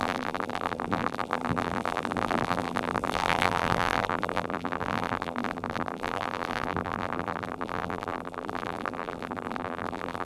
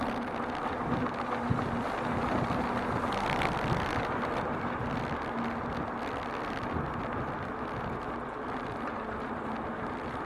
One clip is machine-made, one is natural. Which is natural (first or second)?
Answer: second